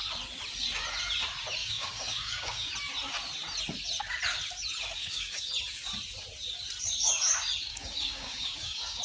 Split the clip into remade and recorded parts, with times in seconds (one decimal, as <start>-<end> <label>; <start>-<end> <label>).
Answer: 0.0-1.6 recorded; 1.6-2.7 remade; 2.7-5.0 recorded; 5.0-5.5 remade; 5.5-7.7 recorded; 7.7-9.0 remade